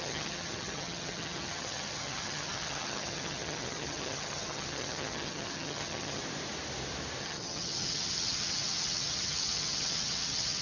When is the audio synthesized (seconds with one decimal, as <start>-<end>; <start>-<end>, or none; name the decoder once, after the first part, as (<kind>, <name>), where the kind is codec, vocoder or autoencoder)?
0.0-6.2 (vocoder, HiFi-GAN); 7.2-10.6